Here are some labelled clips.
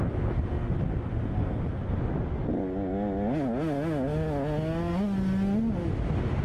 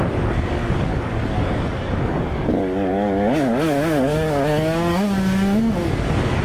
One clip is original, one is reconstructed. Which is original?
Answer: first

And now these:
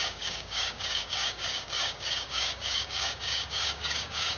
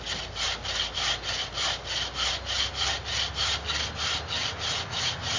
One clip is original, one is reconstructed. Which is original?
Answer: second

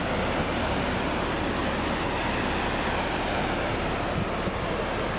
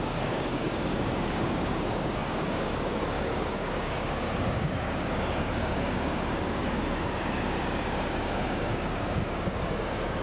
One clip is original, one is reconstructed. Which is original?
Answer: first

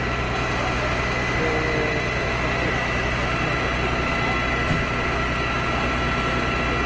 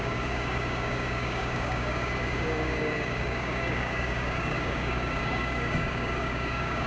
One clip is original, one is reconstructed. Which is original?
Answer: first